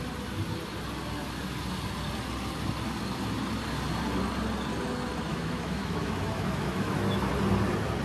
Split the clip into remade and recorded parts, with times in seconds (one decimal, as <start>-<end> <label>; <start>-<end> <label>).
0.0-5.3 recorded; 5.3-7.3 remade; 7.3-8.0 recorded